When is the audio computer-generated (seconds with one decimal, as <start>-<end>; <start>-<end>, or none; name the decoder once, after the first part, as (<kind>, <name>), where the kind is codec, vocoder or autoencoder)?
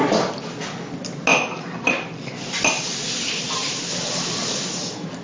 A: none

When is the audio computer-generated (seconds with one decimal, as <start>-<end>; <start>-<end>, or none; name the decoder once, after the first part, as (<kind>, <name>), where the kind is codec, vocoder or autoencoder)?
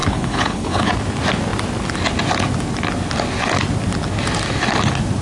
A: 0.0-0.9 (codec, HILCodec)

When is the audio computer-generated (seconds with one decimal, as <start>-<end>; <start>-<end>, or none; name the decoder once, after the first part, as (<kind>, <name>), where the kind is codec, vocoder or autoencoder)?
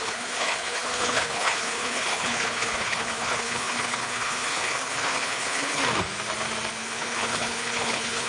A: 0.0-5.8 (codec, HILCodec); 6.7-8.3